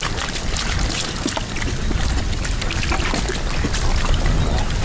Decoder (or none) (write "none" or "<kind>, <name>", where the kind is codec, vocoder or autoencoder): none